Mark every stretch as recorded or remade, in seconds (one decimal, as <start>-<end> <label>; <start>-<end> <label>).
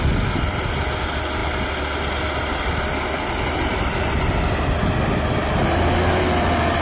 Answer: 0.0-6.8 recorded